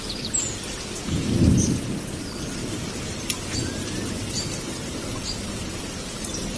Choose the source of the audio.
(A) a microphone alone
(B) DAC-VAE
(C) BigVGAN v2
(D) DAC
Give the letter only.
A